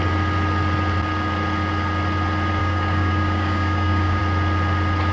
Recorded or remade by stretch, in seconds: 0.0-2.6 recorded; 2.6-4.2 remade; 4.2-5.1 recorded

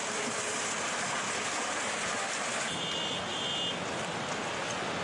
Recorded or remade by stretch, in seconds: 0.0-5.0 recorded

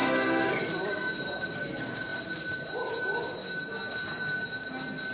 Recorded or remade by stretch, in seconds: 0.0-5.1 recorded